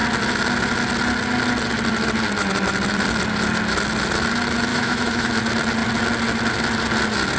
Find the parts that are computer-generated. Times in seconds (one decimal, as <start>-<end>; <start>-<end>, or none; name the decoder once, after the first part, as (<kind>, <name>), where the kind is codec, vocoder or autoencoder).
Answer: 4.7-5.3 (autoencoder, DAC-VAE)